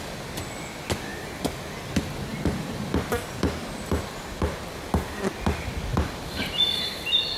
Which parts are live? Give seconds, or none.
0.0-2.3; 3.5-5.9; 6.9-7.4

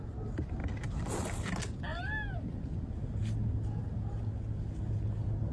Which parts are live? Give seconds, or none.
0.0-0.6; 1.5-5.5

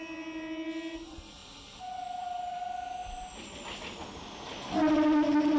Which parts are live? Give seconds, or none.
0.0-1.4; 2.6-5.6

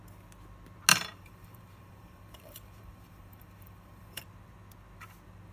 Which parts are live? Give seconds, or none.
0.0-0.9; 4.2-5.5

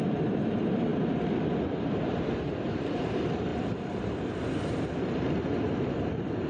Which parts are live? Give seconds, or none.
0.9-1.7

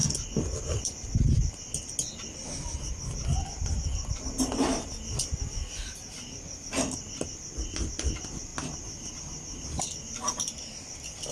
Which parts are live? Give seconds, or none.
0.0-5.6; 6.7-8.5; 9.1-11.3

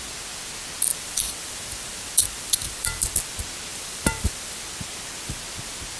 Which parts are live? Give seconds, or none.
0.0-0.9; 3.3-3.7; 4.6-6.0